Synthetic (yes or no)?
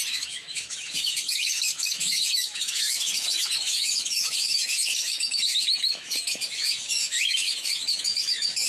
yes